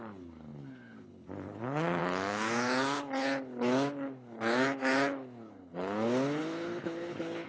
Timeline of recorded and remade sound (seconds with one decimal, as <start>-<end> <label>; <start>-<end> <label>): 0.0-7.5 remade